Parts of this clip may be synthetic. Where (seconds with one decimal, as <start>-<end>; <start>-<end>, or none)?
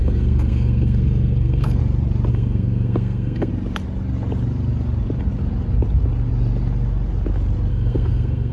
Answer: 0.0-1.8; 2.3-3.5; 7.7-8.5